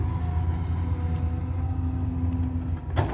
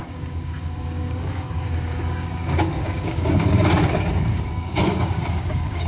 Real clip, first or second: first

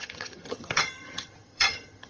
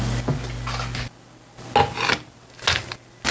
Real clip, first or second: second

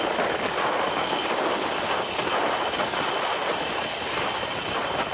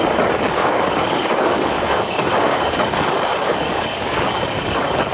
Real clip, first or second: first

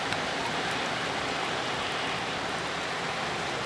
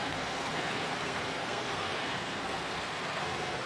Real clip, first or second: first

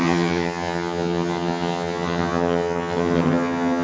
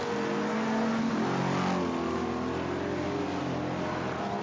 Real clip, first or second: second